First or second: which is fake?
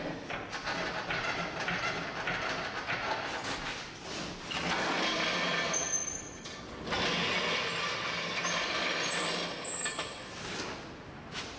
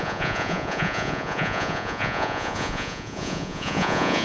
second